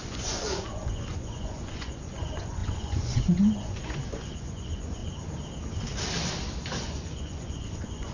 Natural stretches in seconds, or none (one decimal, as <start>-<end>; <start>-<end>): 5.0-6.8